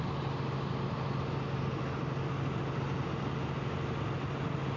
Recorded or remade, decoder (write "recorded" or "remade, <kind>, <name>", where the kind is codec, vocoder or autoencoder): recorded